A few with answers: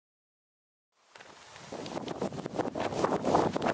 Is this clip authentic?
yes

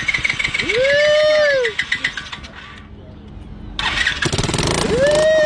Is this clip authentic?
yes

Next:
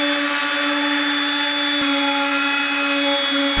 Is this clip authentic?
yes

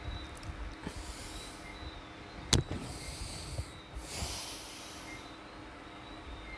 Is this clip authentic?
yes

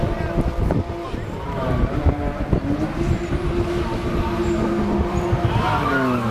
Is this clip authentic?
yes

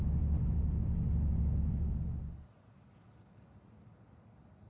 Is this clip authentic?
yes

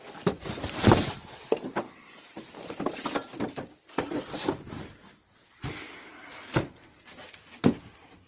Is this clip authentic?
no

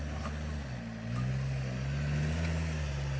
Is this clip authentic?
yes